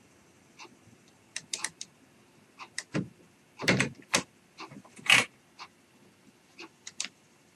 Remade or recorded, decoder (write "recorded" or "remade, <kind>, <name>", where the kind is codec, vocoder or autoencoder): remade, vocoder, BigVGAN v2